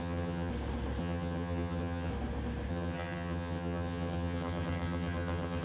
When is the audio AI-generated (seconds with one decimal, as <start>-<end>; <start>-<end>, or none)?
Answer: 0.0-0.5; 1.0-2.1; 2.7-5.6